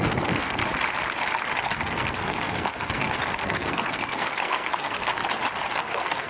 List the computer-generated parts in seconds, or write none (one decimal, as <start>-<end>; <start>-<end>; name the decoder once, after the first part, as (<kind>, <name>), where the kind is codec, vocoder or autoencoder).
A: 0.0-0.6 (codec, SNAC); 1.6-5.2; 5.7-6.3